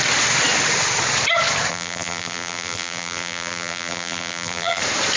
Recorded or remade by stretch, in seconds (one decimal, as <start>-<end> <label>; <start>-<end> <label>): 0.0-1.7 recorded; 1.7-4.8 remade; 4.8-5.2 recorded